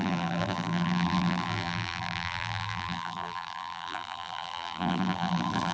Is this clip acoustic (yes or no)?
no